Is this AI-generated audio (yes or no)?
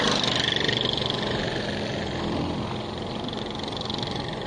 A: no